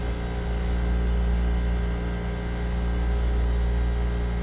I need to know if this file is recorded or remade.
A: recorded